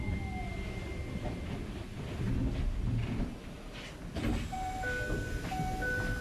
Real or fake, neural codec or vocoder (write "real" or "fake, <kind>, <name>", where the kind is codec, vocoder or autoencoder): real